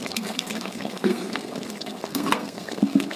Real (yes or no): no